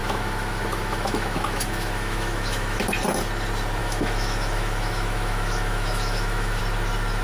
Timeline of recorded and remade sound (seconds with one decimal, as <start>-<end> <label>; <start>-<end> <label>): 0.0-2.8 remade; 2.8-3.8 recorded; 3.8-6.6 remade; 6.6-7.2 recorded